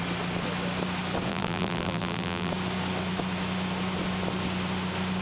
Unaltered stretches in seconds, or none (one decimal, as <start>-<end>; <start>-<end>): 0.0-1.3; 2.5-5.2